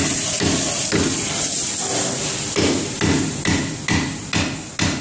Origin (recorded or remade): recorded